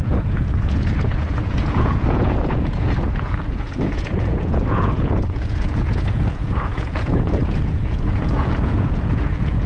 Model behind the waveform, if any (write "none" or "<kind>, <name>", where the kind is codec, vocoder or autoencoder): vocoder, Vocos